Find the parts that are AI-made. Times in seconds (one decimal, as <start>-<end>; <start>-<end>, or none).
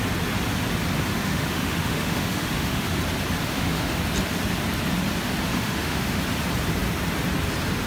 1.1-3.0; 3.5-4.0; 5.5-6.2